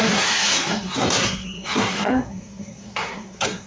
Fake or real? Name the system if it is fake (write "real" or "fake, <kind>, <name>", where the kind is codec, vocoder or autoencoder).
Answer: fake, codec, SNAC